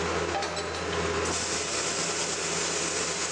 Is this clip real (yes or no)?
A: yes